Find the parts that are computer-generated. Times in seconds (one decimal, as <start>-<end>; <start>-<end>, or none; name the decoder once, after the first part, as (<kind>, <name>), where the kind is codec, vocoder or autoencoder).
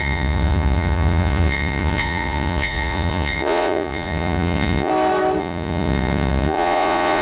0.0-4.9 (vocoder, Vocos); 5.4-7.2